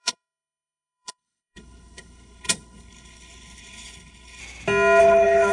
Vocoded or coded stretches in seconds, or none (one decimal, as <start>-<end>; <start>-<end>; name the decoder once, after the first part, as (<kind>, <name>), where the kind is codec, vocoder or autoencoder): 0.0-4.4 (codec, HILCodec); 5.0-5.5